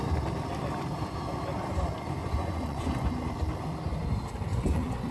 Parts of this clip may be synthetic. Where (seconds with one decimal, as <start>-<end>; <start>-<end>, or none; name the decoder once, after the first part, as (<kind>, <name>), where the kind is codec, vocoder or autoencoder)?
2.2-3.1 (vocoder, Vocos); 4.5-5.1